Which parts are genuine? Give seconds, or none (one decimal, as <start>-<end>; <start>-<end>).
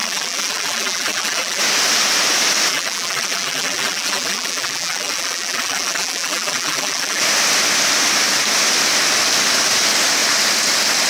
1.6-2.7; 7.2-11.1